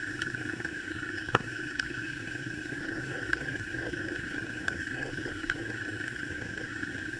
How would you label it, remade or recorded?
remade